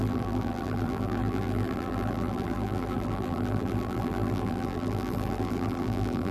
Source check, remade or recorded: remade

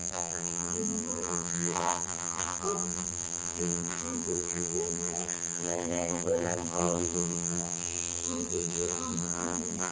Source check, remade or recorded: remade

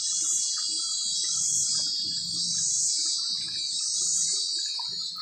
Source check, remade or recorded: recorded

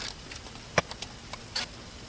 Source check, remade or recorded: recorded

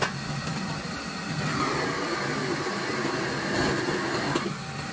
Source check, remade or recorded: recorded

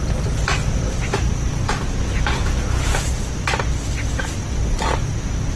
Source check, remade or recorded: recorded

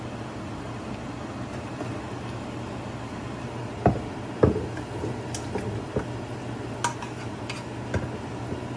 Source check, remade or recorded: recorded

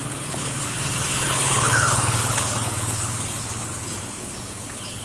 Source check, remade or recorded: remade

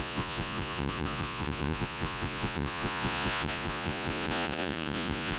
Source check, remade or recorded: remade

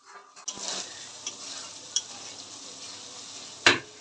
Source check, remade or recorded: recorded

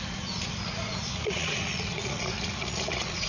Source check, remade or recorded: remade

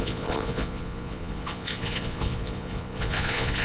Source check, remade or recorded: remade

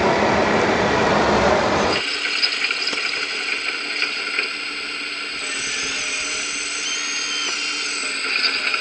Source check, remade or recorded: recorded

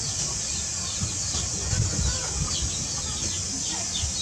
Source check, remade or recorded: recorded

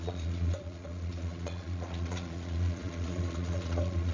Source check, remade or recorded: remade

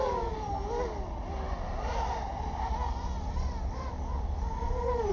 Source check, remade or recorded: recorded